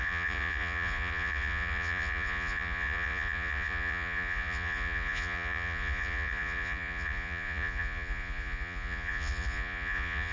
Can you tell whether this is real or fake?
fake